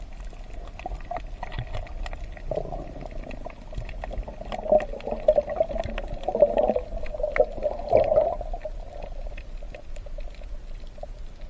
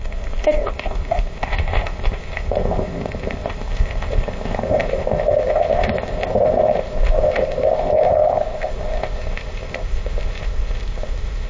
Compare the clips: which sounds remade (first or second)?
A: second